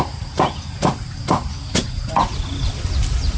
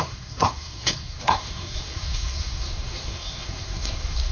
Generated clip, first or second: second